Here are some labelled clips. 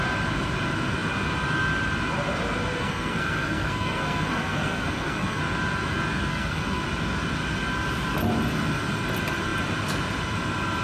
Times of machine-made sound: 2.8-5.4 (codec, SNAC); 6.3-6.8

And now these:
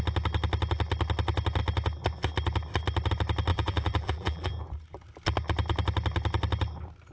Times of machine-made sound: 3.5-4.5 (vocoder, BigVGAN v2)

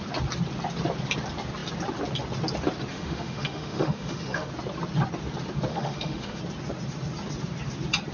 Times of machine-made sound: 2.9-4.5 (autoencoder, DAC-VAE); 5.7-6.4

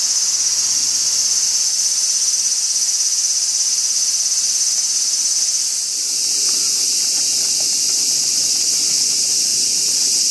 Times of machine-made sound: none